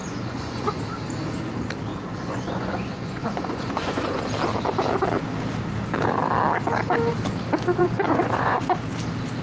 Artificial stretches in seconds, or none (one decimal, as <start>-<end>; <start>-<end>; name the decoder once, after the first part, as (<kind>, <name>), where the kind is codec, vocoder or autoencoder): 0.0-0.8 (vocoder, Vocos); 1.9-4.2; 7.8-8.6